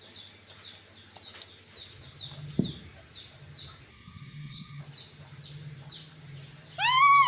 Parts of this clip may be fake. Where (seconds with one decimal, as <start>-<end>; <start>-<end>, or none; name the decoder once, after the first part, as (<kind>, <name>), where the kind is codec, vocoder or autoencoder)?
3.9-4.8 (codec, SNAC)